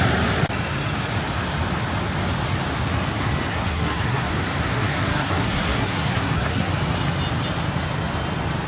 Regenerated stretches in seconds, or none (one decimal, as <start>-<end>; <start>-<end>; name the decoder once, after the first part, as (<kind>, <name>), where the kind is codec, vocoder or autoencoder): 3.5-4.3 (codec, SNAC); 4.7-6.7